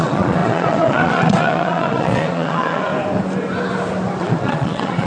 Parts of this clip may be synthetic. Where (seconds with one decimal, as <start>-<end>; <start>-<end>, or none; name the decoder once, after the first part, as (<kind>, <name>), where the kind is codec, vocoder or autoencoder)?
0.0-2.9 (vocoder, Vocos); 4.2-5.1